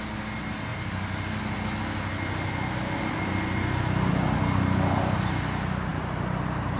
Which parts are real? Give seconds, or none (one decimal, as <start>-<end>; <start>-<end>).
0.0-5.9